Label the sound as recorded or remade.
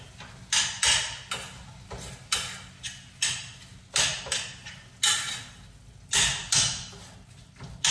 recorded